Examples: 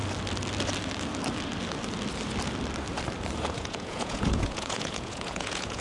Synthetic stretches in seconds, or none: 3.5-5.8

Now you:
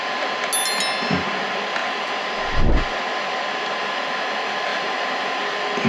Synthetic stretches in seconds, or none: none

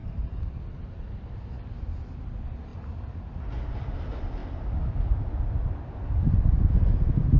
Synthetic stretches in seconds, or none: none

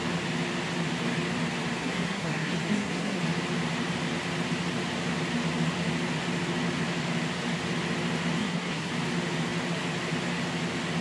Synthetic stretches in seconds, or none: 1.8-3.2; 8.4-8.9

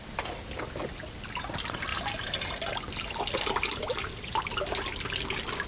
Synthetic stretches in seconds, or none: none

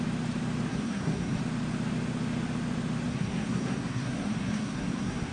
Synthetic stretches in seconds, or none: 0.7-1.4; 3.1-5.3

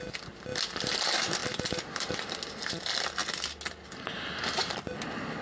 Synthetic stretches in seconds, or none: none